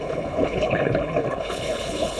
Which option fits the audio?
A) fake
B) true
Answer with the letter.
A